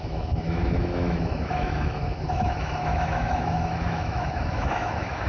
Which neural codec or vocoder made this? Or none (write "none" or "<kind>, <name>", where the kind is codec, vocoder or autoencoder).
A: autoencoder, DAC-VAE